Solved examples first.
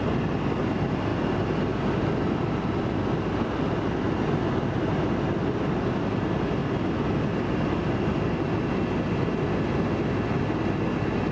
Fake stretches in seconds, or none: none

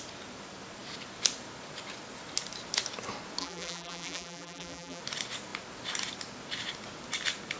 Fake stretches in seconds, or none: 3.4-5.0 (vocoder, BigVGAN v2)